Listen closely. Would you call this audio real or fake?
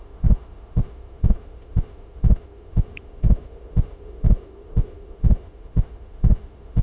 fake